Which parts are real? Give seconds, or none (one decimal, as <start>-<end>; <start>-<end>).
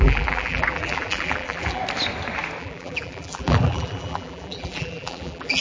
1.8-2.6